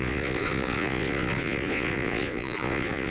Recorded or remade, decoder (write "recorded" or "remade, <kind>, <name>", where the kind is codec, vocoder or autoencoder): remade, vocoder, Vocos